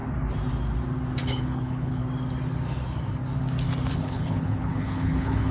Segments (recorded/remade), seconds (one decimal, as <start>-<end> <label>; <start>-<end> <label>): 0.0-1.2 recorded; 1.2-2.0 remade; 2.0-3.9 recorded; 3.9-5.5 remade